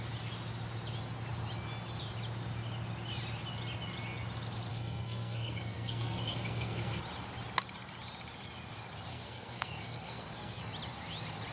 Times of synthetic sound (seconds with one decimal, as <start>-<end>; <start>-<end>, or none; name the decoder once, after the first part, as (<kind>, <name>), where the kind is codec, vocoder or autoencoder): 4.7-7.0 (codec, SNAC); 9.1-10.6